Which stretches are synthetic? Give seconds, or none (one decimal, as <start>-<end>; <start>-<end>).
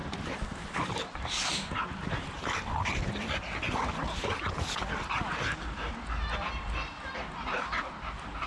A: none